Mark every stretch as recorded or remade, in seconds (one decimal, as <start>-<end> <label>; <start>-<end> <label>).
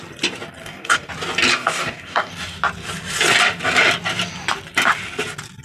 0.0-0.6 recorded; 0.6-1.1 remade; 1.1-1.5 recorded; 1.5-2.3 remade; 2.3-5.6 recorded